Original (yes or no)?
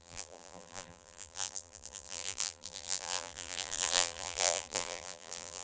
no